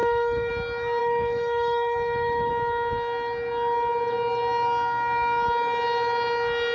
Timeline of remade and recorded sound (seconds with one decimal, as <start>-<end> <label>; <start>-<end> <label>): 0.0-0.5 remade; 0.5-1.0 recorded; 1.0-2.5 remade; 2.5-6.7 recorded